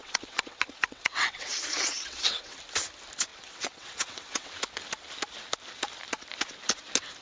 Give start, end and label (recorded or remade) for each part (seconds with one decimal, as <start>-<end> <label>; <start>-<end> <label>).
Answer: 0.0-2.6 remade; 2.6-3.3 recorded; 3.3-4.5 remade; 4.5-7.2 recorded